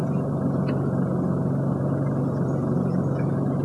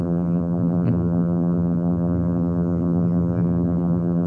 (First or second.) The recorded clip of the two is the first